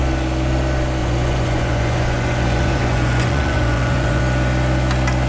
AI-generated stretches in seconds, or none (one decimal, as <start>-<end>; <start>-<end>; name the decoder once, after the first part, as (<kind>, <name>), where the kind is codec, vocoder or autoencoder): 1.0-4.2 (vocoder, Vocos)